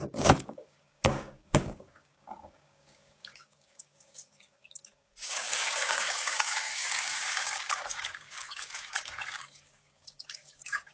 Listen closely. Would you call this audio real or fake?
fake